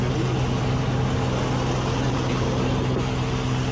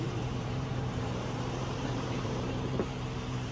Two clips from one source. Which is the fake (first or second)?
second